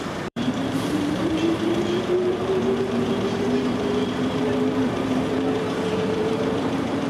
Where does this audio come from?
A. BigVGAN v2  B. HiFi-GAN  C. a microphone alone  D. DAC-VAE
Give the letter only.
A